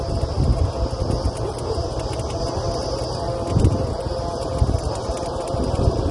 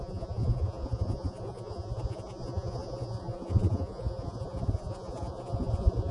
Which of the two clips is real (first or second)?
first